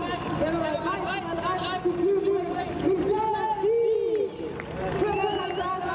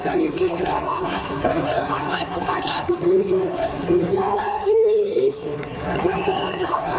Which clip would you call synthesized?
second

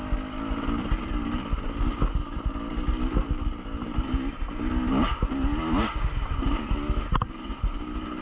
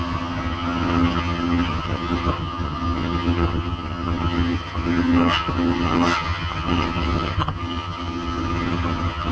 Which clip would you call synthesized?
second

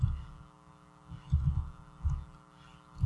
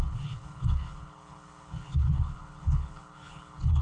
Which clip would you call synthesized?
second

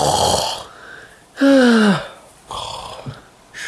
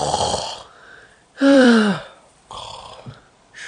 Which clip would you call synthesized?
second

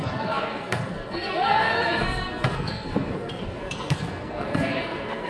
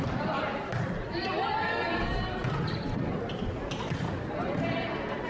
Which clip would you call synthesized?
first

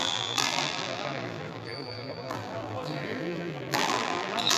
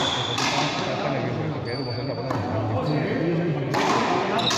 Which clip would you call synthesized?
first